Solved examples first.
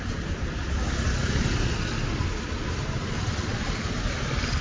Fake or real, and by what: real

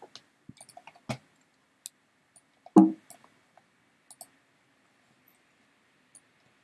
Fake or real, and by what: real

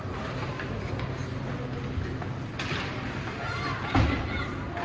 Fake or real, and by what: real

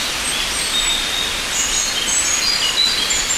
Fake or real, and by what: real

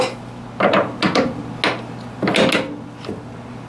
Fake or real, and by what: real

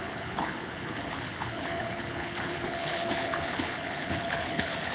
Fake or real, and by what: fake, codec, HILCodec